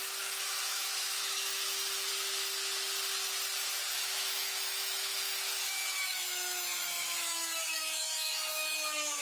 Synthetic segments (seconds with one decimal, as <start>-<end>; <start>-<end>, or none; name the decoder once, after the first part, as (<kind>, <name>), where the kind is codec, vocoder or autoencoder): 0.0-2.1 (autoencoder, DAC-VAE); 3.9-9.2